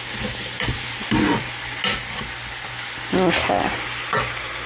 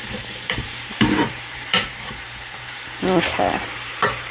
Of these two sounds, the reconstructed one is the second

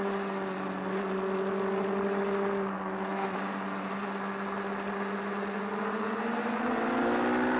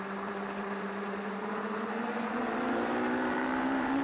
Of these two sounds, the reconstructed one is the second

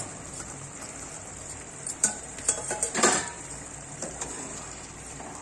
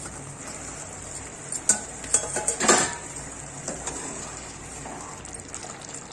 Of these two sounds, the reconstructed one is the first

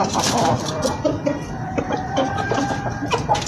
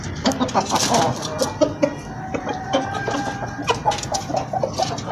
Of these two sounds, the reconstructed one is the first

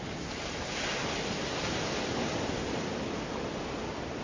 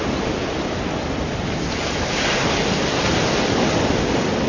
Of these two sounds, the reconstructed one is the second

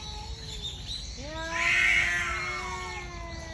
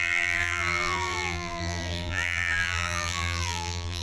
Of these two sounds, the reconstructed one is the second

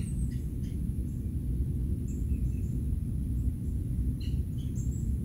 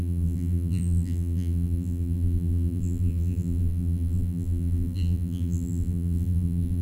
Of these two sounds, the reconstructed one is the second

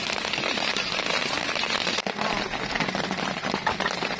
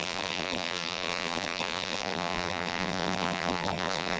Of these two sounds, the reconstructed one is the second